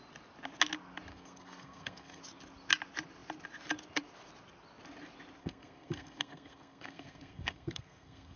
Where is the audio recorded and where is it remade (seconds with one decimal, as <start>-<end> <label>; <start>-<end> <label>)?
0.0-1.1 recorded; 1.1-2.2 remade; 2.2-5.4 recorded; 5.4-8.4 remade